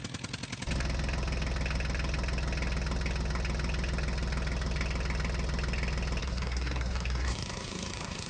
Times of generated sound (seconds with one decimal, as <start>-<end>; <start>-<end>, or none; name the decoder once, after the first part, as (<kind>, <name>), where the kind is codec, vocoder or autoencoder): 6.2-8.3 (codec, SNAC)